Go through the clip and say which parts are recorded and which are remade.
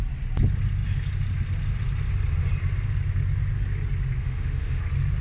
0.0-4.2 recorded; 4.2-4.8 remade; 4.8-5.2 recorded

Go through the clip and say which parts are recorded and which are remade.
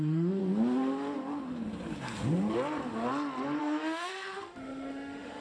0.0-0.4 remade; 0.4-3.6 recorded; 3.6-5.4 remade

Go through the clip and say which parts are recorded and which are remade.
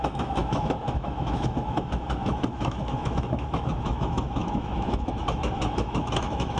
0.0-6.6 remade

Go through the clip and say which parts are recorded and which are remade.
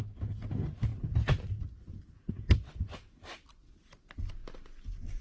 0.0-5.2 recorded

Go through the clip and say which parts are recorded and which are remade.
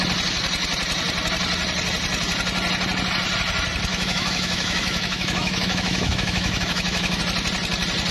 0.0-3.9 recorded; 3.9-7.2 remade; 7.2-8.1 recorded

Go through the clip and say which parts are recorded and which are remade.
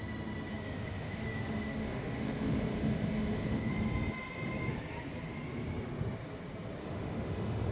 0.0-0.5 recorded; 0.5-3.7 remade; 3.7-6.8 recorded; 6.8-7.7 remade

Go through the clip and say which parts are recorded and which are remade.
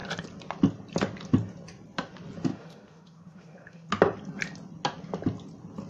0.0-2.5 recorded; 2.5-3.9 remade; 3.9-5.9 recorded